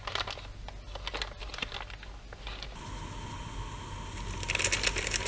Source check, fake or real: real